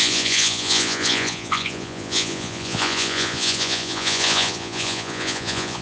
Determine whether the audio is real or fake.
fake